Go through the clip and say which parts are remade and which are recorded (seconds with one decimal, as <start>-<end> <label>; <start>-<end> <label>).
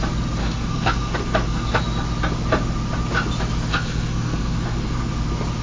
0.0-0.4 recorded; 0.4-1.7 remade; 1.7-3.7 recorded; 3.7-5.1 remade; 5.1-5.6 recorded